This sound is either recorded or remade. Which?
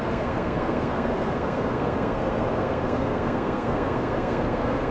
remade